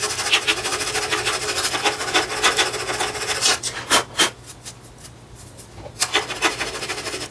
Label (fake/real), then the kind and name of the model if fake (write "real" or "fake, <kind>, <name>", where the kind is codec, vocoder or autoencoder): real